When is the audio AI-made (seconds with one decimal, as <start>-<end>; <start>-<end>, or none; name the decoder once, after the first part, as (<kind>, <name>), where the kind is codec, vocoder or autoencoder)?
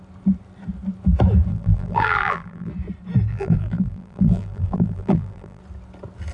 1.5-2.7 (vocoder, BigVGAN v2); 3.3-5.6